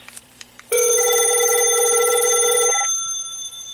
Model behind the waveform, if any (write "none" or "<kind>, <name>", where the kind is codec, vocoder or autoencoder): vocoder, BigVGAN v2